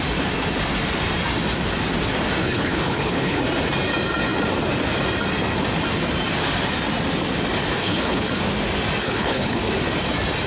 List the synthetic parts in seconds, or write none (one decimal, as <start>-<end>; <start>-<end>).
2.4-3.4; 7.8-8.4; 9.0-9.6